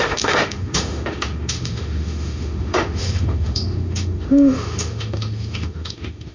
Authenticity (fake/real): fake